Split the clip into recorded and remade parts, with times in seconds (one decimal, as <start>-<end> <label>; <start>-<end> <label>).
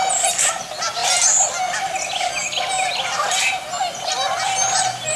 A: 0.0-5.2 recorded